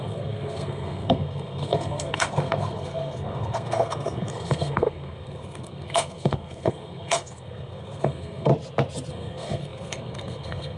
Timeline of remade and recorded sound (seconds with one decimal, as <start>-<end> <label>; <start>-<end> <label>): 0.0-8.5 remade; 8.5-9.1 recorded; 9.1-10.8 remade